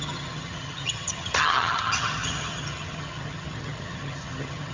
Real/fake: fake